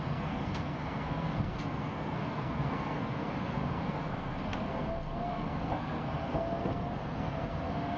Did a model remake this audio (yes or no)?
yes